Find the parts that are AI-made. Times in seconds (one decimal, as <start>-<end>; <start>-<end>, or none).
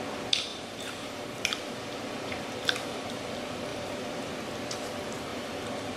0.5-3.2; 3.7-4.3; 5.3-6.0